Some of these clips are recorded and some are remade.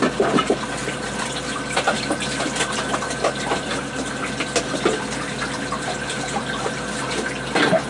recorded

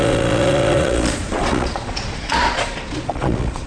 remade